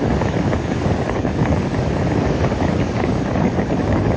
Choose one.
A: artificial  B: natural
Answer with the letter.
A